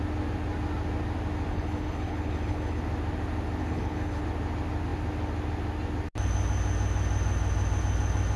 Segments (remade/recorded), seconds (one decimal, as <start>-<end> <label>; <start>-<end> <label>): 0.0-1.5 recorded; 1.5-2.8 remade; 2.8-3.6 recorded; 3.6-4.2 remade; 4.2-8.4 recorded